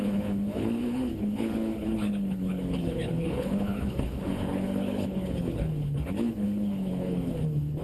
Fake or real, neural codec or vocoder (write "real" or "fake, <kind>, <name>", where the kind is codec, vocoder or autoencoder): fake, codec, HILCodec